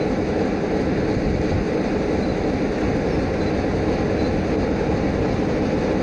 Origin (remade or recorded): recorded